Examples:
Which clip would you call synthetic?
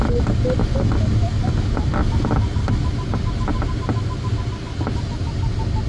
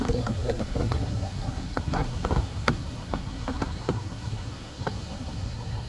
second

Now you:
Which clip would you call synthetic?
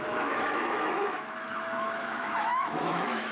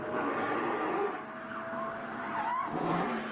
first